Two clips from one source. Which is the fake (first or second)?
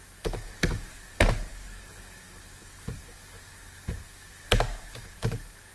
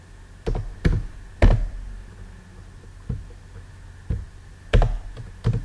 first